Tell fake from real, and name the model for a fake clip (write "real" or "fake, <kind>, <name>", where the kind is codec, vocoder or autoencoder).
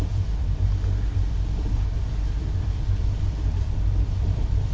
fake, vocoder, BigVGAN v2